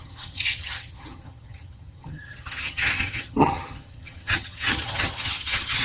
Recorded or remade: remade